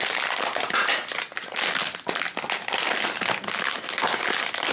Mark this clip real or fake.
real